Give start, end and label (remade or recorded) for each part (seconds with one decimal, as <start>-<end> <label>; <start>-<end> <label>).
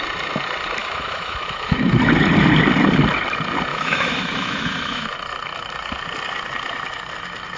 0.0-0.8 recorded; 0.8-1.7 remade; 1.7-3.7 recorded; 3.7-5.1 remade; 5.1-7.6 recorded